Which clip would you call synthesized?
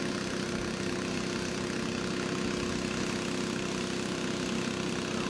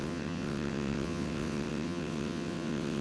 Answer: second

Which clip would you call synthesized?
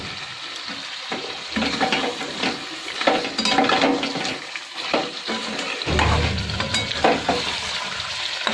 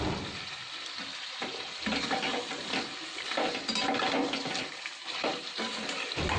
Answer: second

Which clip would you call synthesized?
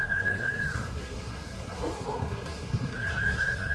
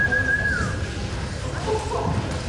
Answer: first